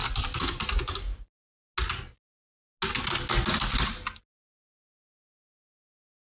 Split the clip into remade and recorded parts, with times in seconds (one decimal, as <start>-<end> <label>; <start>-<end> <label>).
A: 0.0-6.4 recorded